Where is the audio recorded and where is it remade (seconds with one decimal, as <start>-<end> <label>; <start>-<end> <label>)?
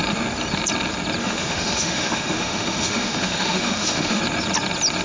0.0-1.2 recorded; 1.2-4.2 remade; 4.2-5.0 recorded